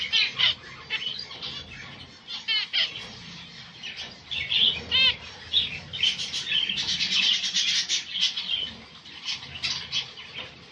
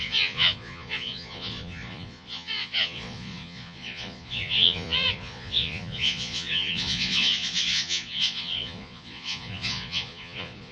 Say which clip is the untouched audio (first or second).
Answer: first